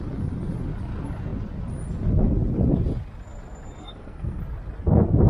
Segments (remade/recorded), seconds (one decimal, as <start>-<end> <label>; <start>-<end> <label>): 0.0-3.8 recorded; 3.8-4.4 remade; 4.4-5.3 recorded